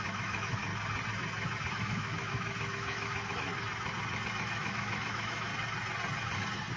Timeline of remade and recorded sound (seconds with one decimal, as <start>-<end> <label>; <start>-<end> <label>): 0.0-0.7 remade; 0.7-1.7 recorded; 1.7-3.5 remade; 3.5-4.4 recorded; 4.4-5.5 remade; 5.5-6.8 recorded

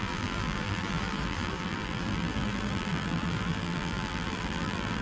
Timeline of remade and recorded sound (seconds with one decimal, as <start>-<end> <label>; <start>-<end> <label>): 0.0-5.0 remade

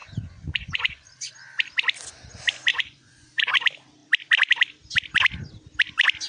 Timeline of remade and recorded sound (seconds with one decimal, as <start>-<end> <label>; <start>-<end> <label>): 0.0-1.3 remade; 1.3-2.7 recorded; 2.7-3.5 remade; 3.5-6.3 recorded

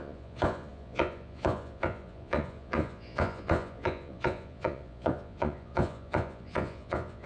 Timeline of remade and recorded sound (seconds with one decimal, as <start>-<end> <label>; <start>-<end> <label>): 0.0-7.3 remade